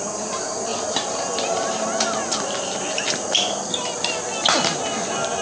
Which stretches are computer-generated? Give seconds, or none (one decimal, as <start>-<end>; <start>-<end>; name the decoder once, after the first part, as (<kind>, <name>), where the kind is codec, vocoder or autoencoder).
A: 0.7-3.6 (vocoder, BigVGAN v2)